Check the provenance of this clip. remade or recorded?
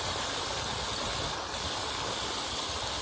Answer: recorded